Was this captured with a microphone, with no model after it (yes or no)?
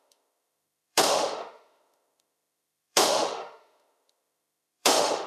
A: no